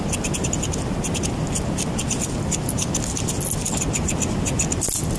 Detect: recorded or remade recorded